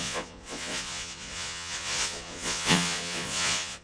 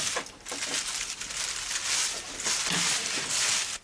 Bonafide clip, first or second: second